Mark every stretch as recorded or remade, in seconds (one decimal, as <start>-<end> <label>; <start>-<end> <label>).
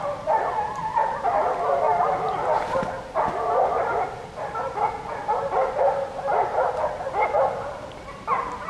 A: 0.0-8.7 recorded